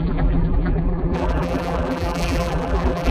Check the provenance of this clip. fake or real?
fake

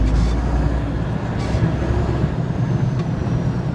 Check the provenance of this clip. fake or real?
real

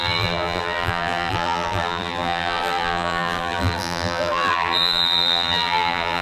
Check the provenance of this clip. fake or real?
fake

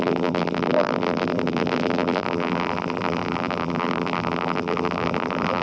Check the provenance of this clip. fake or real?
fake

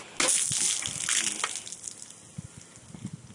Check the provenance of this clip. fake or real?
real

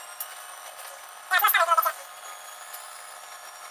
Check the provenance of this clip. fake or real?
real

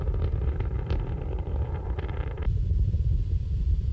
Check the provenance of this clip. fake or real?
fake